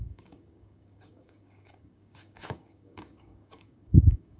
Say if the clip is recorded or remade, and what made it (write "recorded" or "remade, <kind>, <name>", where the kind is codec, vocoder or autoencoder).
remade, codec, DAC